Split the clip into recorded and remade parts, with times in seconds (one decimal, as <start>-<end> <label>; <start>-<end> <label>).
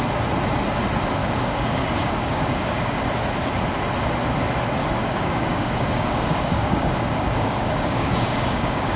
0.0-1.2 recorded; 1.2-3.0 remade; 3.0-5.0 recorded; 5.0-9.0 remade